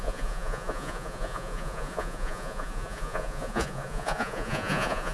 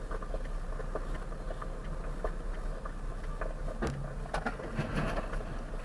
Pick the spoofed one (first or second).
first